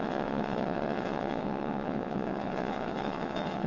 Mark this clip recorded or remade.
remade